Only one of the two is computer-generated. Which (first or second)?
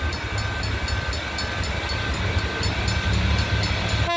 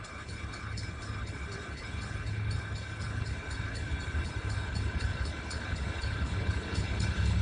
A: second